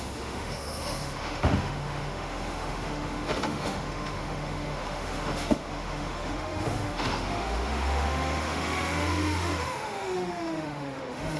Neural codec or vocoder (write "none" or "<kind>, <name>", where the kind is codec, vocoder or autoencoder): autoencoder, DAC-VAE